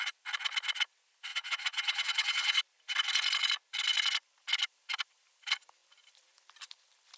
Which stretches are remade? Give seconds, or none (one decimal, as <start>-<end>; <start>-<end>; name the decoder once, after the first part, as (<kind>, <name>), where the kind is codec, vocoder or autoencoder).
1.3-2.6 (vocoder, WaveNeXt)